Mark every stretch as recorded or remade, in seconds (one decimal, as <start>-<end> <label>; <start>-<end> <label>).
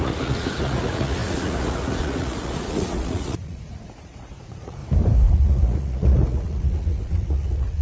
0.0-4.8 remade; 4.8-5.3 recorded; 5.3-7.8 remade